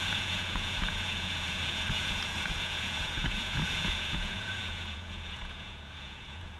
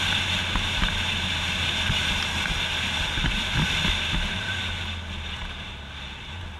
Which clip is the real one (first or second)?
second